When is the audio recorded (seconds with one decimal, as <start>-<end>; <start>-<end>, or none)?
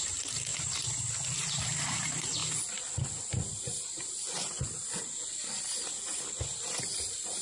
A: 0.5-1.8; 2.4-6.8